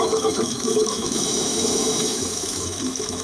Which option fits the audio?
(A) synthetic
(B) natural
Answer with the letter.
A